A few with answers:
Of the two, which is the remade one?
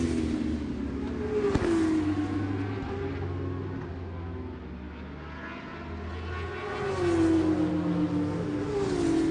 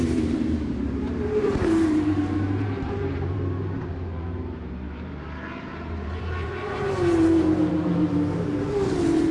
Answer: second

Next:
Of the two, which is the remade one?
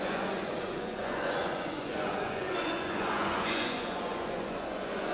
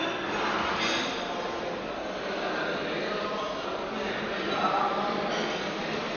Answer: first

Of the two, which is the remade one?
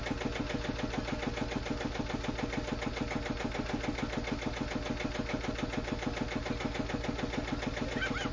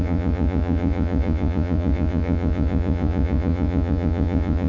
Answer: second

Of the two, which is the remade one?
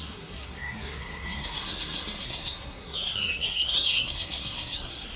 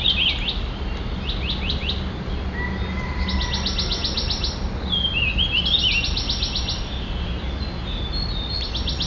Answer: first